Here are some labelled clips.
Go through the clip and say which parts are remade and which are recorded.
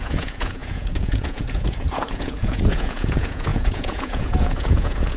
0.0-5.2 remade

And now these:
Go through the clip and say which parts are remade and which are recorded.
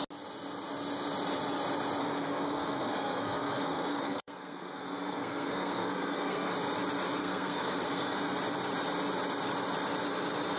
0.0-2.0 recorded; 2.0-6.5 remade; 6.5-7.2 recorded; 7.2-8.2 remade; 8.2-10.6 recorded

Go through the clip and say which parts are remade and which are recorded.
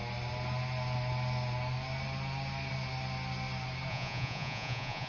0.0-3.9 recorded; 3.9-5.1 remade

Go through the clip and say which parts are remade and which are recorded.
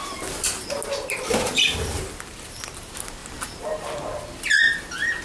0.0-5.2 recorded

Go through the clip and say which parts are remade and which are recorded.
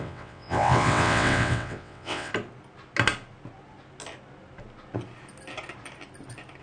0.0-2.3 remade; 2.3-6.6 recorded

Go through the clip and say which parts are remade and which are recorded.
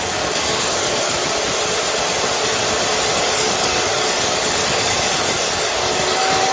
0.0-1.2 remade; 1.2-3.2 recorded; 3.2-6.5 remade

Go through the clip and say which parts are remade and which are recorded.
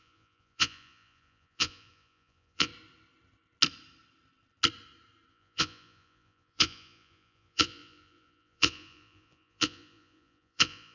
0.0-2.7 remade; 2.7-5.3 recorded; 5.3-10.9 remade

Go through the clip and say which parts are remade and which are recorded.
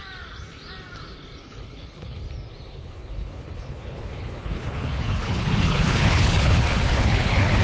0.0-1.4 recorded; 1.4-2.2 remade; 2.2-2.7 recorded; 2.7-7.6 remade